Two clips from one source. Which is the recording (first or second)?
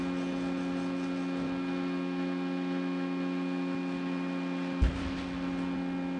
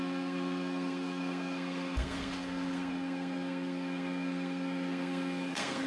first